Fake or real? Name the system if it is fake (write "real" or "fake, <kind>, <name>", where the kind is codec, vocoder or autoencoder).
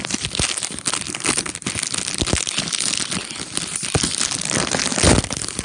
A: real